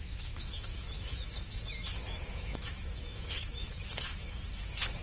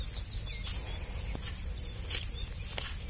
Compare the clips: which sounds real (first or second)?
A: second